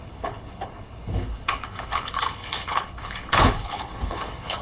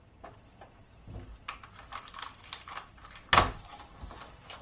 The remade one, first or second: first